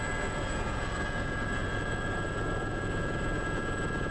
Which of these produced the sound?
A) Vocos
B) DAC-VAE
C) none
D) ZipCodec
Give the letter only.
A